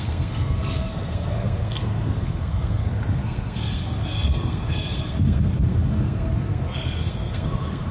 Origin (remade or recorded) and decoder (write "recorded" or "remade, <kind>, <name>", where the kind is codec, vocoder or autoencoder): remade, codec, SNAC